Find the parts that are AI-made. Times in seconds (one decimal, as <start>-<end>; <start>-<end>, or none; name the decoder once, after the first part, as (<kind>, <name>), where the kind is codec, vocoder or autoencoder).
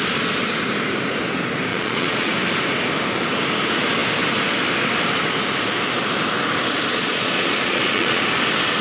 1.7-2.3 (vocoder, Vocos); 6.9-8.2